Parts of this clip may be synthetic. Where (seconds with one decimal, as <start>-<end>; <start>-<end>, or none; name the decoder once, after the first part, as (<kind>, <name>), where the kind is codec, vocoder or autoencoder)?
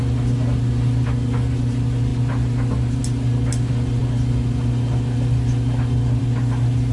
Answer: none